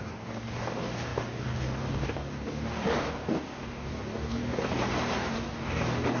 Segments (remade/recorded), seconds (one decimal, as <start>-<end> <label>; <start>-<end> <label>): 0.0-4.4 remade; 4.4-5.3 recorded; 5.3-6.2 remade